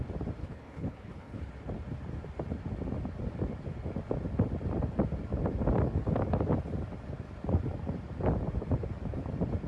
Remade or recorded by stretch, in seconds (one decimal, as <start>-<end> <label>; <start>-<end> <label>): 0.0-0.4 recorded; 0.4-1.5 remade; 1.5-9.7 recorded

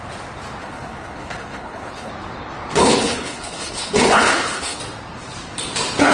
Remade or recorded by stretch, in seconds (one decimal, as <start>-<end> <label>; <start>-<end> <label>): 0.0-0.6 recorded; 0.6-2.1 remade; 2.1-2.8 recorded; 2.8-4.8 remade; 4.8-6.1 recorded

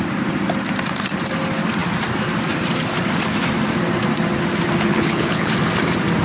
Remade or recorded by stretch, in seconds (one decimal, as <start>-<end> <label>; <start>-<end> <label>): 0.0-4.9 recorded; 4.9-5.5 remade; 5.5-6.2 recorded

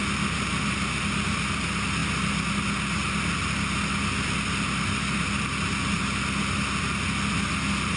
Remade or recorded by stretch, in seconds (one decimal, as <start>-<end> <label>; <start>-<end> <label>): 0.0-8.0 recorded

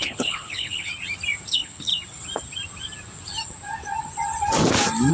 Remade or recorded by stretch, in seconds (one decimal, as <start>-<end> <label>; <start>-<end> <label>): 0.0-0.9 remade; 0.9-1.5 recorded; 1.5-1.9 remade; 1.9-5.1 recorded

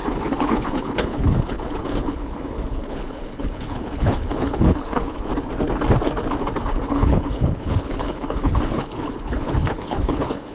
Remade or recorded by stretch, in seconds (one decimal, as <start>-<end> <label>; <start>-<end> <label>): 0.0-5.3 remade; 5.3-6.7 recorded; 6.7-10.5 remade

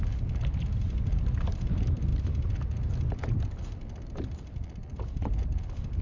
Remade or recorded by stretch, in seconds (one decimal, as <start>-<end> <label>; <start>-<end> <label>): 0.0-6.0 recorded